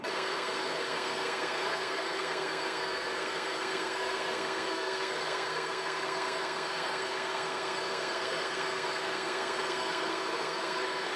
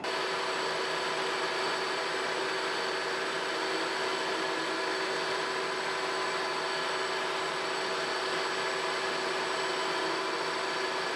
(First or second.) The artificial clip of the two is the first